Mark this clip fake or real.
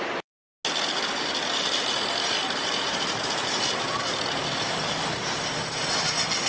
real